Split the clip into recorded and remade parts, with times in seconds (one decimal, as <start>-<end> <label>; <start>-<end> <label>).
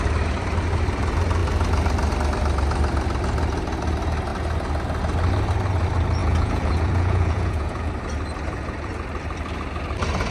0.0-6.2 recorded; 6.2-7.9 remade; 7.9-10.3 recorded